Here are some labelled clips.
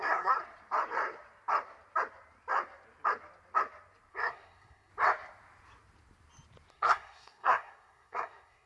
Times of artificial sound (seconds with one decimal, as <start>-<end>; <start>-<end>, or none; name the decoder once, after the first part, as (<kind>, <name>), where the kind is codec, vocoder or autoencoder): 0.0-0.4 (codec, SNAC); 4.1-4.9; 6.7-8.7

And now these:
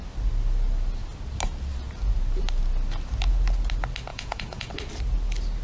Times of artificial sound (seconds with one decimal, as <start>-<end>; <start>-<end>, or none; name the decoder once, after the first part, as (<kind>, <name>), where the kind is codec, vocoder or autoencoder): 4.1-4.7 (vocoder, Vocos)

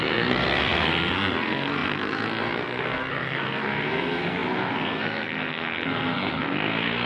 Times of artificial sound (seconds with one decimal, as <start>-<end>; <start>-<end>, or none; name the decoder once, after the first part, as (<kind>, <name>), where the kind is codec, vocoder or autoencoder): 0.0-7.1 (codec, SNAC)

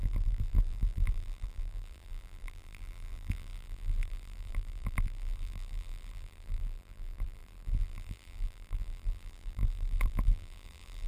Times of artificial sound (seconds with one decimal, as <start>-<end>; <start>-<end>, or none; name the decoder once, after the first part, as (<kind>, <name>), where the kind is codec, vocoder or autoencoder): 0.0-11.1 (vocoder, BigVGAN v2)

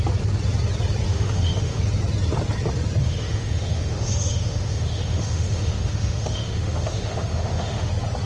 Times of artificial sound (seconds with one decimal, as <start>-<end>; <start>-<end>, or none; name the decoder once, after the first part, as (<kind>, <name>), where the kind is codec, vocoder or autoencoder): 1.1-1.8 (autoencoder, DAC-VAE); 3.0-7.9

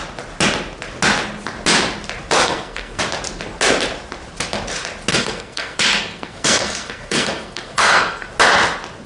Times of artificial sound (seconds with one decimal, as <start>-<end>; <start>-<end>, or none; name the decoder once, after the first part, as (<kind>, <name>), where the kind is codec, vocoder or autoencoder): 2.4-3.0 (codec, SNAC); 5.1-8.3

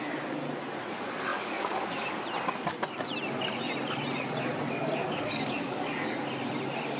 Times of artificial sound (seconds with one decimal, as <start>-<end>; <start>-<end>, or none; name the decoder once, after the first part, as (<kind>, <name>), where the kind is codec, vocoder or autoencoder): 1.3-2.2 (codec, DAC); 5.0-6.2

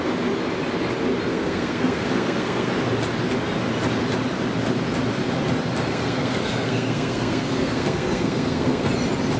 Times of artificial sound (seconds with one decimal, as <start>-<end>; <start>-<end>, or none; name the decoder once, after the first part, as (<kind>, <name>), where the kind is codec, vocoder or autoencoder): 1.3-2.7 (codec, SNAC); 5.9-8.9